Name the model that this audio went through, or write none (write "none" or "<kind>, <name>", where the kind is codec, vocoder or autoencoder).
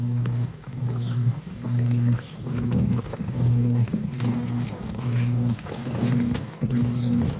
codec, DAC